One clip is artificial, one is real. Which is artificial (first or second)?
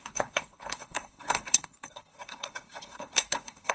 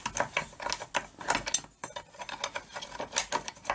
first